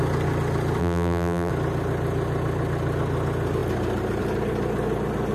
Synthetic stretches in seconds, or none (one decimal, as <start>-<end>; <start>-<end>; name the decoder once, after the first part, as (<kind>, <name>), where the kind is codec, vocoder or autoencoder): 0.8-1.5 (vocoder, BigVGAN v2)